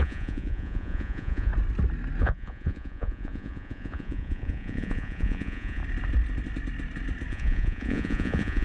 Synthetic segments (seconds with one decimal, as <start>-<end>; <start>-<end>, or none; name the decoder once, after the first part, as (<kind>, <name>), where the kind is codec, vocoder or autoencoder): 0.0-1.5 (vocoder, Vocos); 2.2-5.8; 7.3-8.6